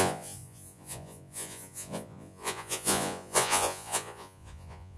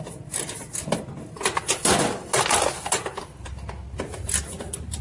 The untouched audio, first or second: second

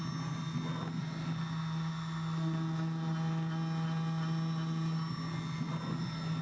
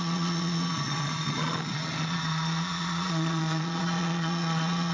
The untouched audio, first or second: first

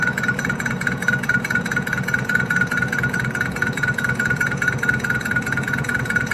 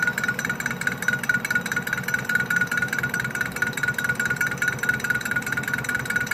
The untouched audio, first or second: second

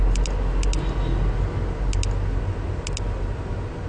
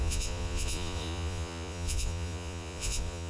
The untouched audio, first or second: first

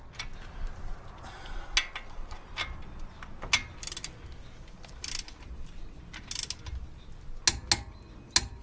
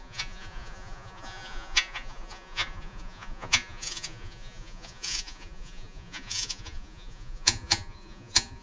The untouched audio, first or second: first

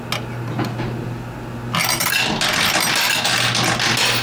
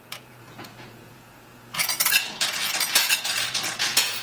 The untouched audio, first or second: first